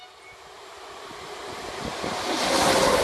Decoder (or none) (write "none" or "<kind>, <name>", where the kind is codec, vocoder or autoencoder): none